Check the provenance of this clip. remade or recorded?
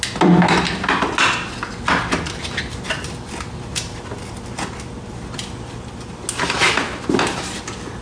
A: recorded